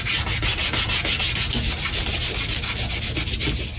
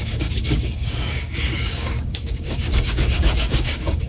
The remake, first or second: second